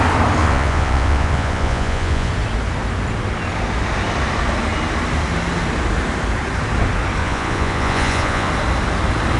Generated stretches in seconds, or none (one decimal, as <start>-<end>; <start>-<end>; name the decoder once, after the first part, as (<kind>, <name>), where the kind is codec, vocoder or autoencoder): 0.4-2.3 (vocoder, Vocos); 7.2-8.5